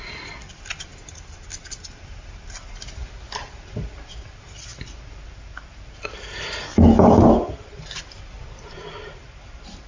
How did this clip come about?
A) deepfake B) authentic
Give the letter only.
B